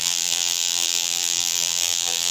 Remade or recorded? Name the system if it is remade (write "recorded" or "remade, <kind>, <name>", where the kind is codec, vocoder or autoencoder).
remade, vocoder, BigVGAN v2